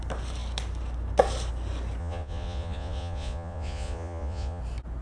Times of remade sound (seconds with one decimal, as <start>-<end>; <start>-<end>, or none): 2.0-4.6